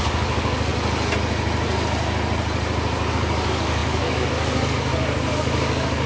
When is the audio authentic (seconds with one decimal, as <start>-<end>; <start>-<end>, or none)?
0.7-3.1